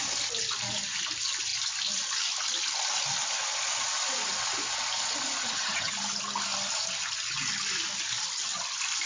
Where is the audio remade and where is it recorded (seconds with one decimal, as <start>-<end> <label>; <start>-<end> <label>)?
0.0-5.4 recorded; 5.4-5.9 remade; 5.9-9.1 recorded